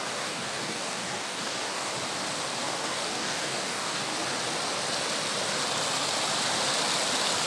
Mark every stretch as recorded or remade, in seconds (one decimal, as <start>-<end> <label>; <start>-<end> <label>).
0.0-1.9 remade; 1.9-2.6 recorded; 2.6-4.1 remade; 4.1-7.5 recorded